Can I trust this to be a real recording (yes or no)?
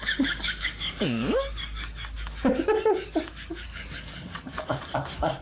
no